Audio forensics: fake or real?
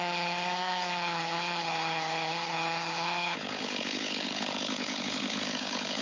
fake